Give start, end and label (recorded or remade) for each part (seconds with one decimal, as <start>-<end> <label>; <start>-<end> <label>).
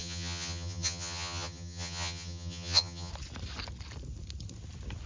0.0-3.1 remade; 3.1-5.1 recorded